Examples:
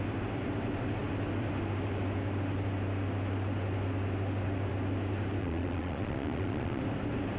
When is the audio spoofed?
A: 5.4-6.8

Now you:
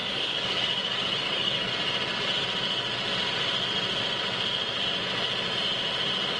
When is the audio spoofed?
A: 0.0-1.7

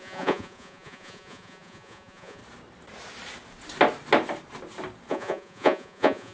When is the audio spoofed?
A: 0.0-2.4; 5.1-6.3

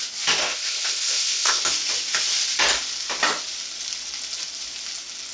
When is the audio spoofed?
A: 0.4-1.6

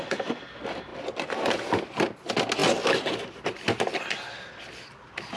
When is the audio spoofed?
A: none